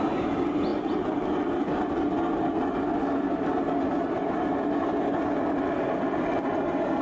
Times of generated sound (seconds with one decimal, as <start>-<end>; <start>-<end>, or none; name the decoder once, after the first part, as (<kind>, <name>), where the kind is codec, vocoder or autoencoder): none